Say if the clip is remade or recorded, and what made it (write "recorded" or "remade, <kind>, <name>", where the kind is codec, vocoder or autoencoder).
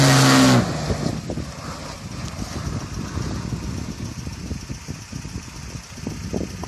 recorded